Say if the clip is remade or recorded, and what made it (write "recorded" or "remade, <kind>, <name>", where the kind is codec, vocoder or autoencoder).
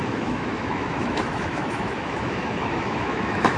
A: remade, autoencoder, DAC-VAE